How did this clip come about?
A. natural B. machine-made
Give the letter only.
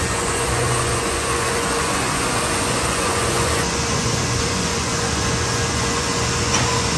B